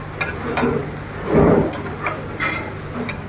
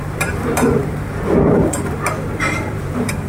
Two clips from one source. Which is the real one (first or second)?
first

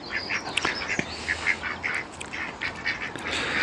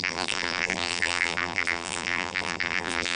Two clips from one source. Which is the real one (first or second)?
first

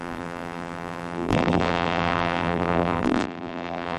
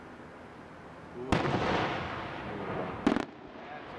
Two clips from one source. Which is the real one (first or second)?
second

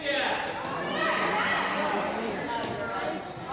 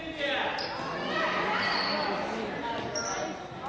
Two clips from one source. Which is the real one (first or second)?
second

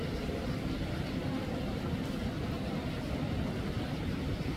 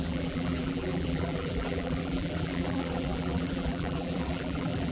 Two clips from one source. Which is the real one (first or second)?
first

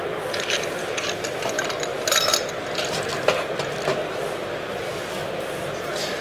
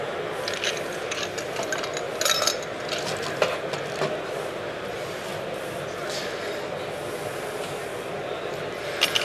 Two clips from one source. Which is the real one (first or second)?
second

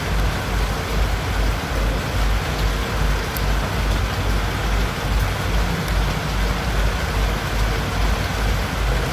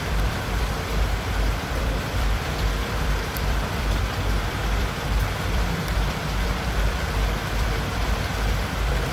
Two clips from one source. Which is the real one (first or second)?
first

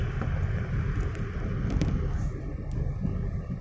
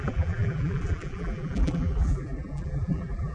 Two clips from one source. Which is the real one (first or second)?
first